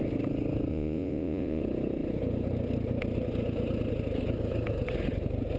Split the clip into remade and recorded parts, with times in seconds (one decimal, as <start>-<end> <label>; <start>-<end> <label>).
0.0-0.7 recorded; 0.7-1.6 remade; 1.6-5.6 recorded